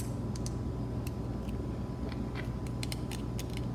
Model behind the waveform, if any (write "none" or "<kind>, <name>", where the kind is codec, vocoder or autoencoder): none